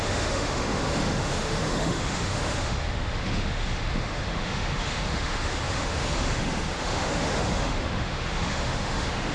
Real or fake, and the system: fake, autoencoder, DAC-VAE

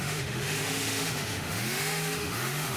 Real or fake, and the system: fake, autoencoder, DAC-VAE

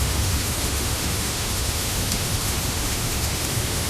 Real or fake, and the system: fake, autoencoder, DAC-VAE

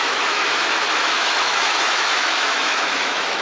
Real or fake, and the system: fake, autoencoder, DAC-VAE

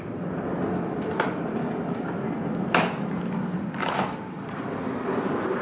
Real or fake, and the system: real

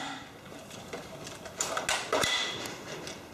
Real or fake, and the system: real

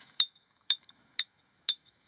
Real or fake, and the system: fake, autoencoder, DAC-VAE